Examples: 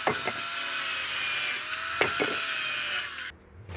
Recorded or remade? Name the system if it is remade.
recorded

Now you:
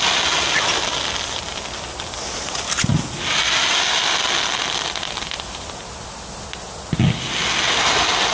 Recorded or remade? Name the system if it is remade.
recorded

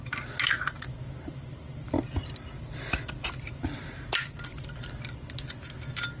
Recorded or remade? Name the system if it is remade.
recorded